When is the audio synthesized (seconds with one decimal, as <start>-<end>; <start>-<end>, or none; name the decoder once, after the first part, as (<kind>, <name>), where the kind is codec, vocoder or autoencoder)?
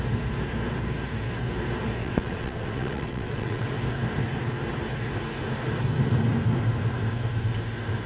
2.0-3.7 (vocoder, WaveNeXt)